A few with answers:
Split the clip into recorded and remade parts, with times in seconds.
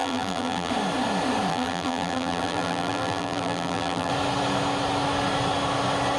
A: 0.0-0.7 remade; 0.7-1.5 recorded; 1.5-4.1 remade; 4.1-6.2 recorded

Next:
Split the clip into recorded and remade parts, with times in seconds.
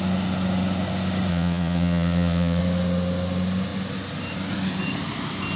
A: 0.0-1.3 recorded; 1.3-2.6 remade; 2.6-5.6 recorded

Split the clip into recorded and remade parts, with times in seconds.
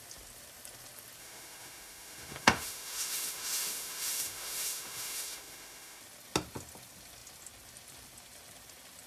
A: 0.0-1.2 recorded; 1.2-6.0 remade; 6.0-9.1 recorded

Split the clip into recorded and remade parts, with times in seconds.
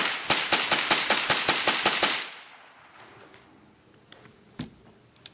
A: 0.0-5.3 recorded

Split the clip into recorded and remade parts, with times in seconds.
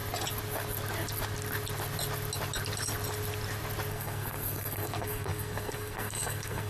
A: 0.0-3.9 recorded; 3.9-6.7 remade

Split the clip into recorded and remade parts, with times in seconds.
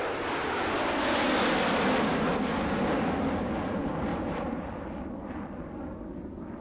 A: 0.0-4.1 recorded; 4.1-4.7 remade; 4.7-6.6 recorded